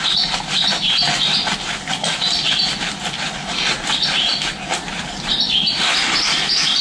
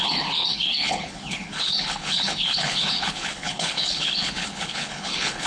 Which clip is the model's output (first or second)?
second